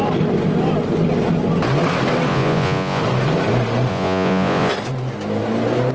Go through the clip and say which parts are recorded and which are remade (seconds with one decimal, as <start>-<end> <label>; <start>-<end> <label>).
0.0-2.3 recorded; 2.3-3.0 remade; 3.0-3.9 recorded; 3.9-4.7 remade; 4.7-5.9 recorded